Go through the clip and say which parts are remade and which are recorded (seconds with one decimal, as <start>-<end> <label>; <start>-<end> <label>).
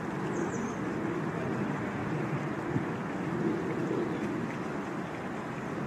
0.0-5.9 recorded